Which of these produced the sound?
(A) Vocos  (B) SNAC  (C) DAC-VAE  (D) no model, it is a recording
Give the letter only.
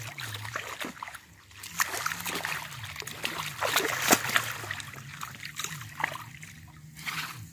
D